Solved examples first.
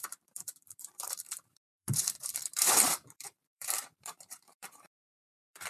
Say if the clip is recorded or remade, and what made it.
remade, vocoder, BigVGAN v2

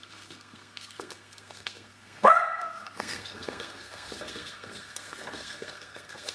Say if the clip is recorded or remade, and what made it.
remade, codec, SNAC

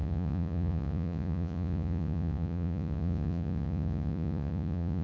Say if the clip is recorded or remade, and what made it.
remade, vocoder, Vocos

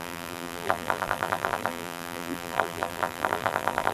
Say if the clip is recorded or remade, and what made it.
remade, vocoder, BigVGAN v2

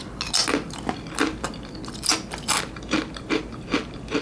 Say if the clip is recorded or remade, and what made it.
recorded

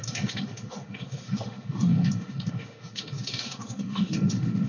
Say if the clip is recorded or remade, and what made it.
remade, autoencoder, DAC-VAE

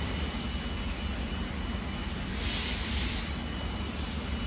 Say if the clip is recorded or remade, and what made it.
recorded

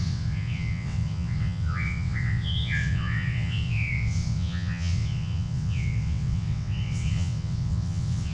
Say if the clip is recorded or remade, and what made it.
remade, vocoder, WaveNeXt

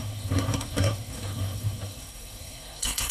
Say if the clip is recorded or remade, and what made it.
remade, codec, SNAC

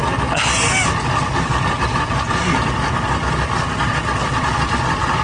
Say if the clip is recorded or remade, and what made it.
recorded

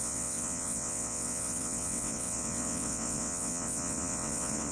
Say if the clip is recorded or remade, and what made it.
remade, vocoder, WaveNeXt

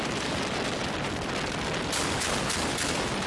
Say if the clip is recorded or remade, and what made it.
recorded